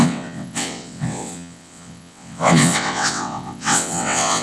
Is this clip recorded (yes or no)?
no